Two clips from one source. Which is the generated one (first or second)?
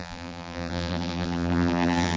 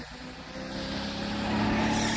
first